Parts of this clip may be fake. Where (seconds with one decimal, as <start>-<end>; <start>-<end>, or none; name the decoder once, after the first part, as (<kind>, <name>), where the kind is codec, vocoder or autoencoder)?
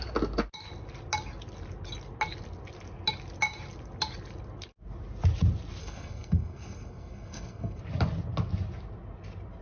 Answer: 5.8-7.8 (codec, SNAC)